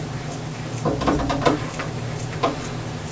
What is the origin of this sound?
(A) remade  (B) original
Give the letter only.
B